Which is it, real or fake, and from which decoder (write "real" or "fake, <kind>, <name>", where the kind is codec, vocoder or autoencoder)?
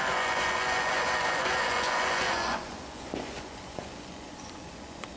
fake, vocoder, Vocos